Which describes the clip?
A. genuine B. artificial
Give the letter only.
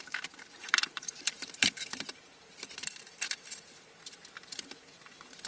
B